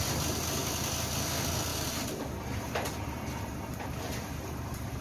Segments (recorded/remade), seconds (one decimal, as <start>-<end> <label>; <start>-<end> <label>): 0.0-1.7 recorded; 1.7-5.0 remade